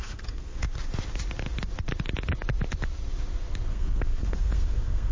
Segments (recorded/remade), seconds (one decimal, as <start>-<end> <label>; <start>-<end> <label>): 0.0-0.6 remade; 0.6-3.7 recorded; 3.7-5.1 remade